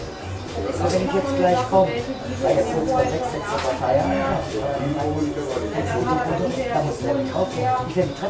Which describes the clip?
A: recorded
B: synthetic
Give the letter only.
A